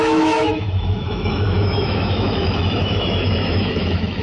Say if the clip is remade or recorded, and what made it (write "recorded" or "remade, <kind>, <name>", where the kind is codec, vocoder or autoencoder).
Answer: remade, autoencoder, DAC-VAE